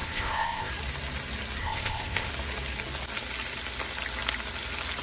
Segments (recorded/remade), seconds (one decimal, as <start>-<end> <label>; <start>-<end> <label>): 0.0-0.7 remade; 0.7-1.6 recorded; 1.6-2.3 remade; 2.3-5.0 recorded